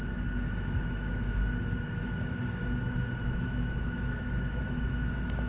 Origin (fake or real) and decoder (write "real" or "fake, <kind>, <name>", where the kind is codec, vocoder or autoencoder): fake, autoencoder, DAC-VAE